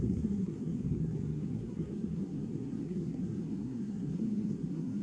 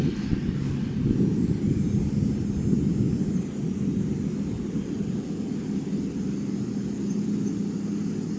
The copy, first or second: first